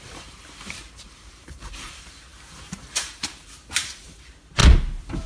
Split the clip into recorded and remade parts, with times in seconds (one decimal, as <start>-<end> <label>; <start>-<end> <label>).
0.0-4.6 remade; 4.6-5.3 recorded